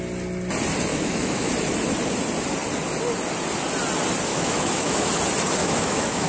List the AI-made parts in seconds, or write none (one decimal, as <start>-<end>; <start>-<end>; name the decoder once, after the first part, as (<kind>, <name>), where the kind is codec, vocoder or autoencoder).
0.9-1.5 (autoencoder, DAC-VAE); 4.3-5.1; 5.6-6.3